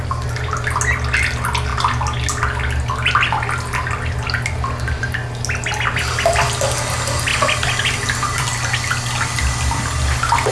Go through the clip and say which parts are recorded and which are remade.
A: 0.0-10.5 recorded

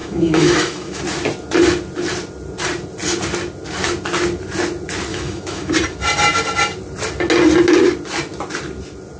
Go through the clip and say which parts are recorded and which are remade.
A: 0.0-1.0 remade; 1.0-5.1 recorded; 5.1-5.7 remade; 5.7-9.2 recorded